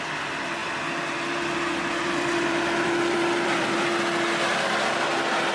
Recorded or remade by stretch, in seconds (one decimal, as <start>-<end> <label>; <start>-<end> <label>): 0.0-0.6 recorded; 0.6-3.9 remade; 3.9-4.5 recorded; 4.5-5.1 remade; 5.1-5.5 recorded